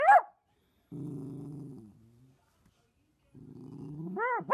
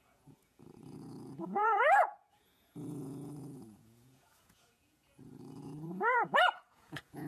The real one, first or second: first